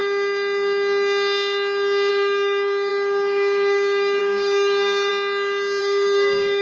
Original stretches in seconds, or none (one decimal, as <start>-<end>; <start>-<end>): 0.0-2.1; 5.1-5.8